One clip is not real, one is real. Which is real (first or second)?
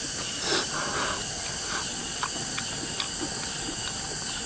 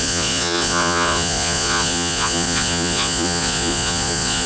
first